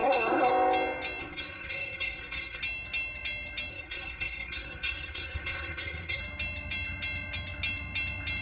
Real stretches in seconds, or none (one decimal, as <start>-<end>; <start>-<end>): 0.5-1.2; 2.6-3.7; 6.2-8.4